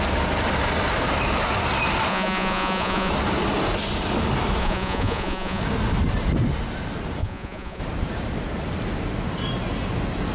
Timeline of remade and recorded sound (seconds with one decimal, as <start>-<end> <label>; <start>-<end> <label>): 0.0-2.1 recorded; 2.1-3.1 remade; 3.1-4.6 recorded; 4.6-5.6 remade; 5.6-7.2 recorded; 7.2-7.8 remade; 7.8-10.3 recorded